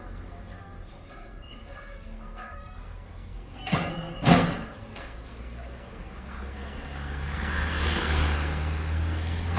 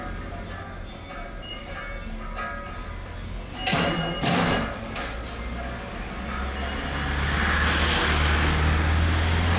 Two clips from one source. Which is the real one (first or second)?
second